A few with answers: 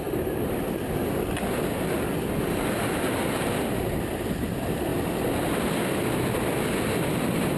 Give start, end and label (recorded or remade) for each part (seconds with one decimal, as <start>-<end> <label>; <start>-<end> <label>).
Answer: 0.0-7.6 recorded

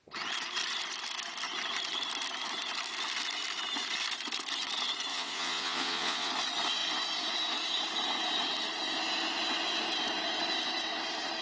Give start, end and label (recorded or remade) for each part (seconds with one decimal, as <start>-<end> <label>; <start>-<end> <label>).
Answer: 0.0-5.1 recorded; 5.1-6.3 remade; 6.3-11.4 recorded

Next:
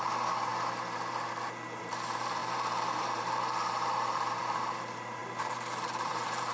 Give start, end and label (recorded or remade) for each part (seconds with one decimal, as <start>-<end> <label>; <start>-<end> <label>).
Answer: 0.0-0.5 remade; 0.5-1.8 recorded; 1.8-6.5 remade

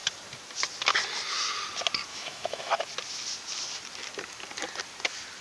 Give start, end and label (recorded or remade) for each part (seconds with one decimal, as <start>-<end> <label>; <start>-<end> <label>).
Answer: 0.0-2.1 recorded; 2.1-2.7 remade; 2.7-5.4 recorded

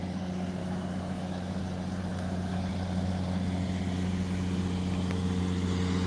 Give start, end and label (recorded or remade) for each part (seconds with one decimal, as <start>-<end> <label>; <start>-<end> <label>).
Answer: 0.0-0.6 recorded; 0.6-1.6 remade; 1.6-2.1 recorded; 2.1-2.7 remade; 2.7-6.1 recorded